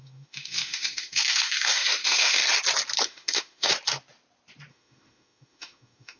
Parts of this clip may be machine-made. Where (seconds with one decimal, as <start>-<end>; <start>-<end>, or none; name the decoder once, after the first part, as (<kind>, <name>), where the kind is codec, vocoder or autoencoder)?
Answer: 0.0-2.4 (autoencoder, DAC-VAE); 3.0-3.7; 4.7-6.2